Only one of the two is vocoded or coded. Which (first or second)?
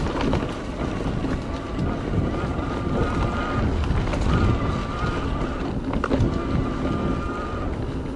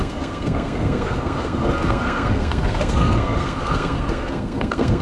second